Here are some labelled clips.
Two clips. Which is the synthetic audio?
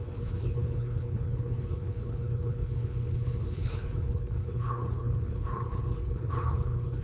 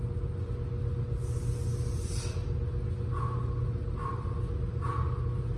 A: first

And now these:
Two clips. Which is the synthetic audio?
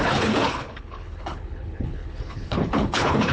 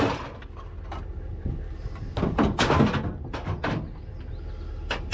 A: first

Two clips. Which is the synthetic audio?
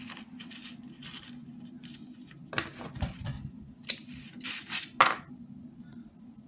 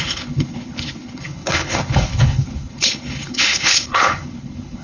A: second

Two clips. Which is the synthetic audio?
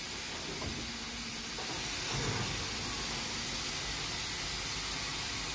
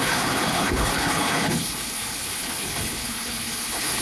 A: second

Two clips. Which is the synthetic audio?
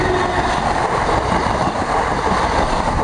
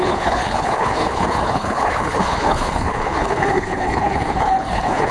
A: second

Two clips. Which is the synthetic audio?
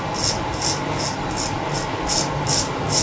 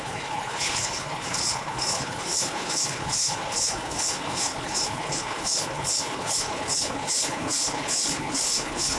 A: second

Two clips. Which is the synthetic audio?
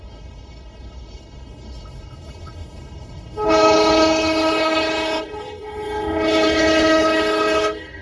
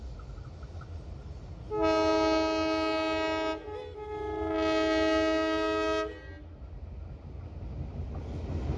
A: first